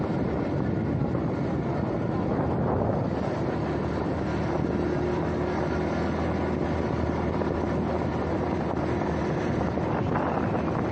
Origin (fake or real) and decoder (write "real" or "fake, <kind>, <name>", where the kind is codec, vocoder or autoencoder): real